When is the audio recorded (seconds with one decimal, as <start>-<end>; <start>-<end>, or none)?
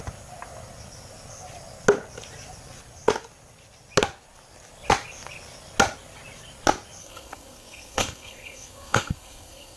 0.0-7.0